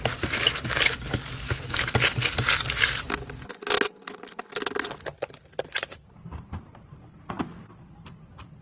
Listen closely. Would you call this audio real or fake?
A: real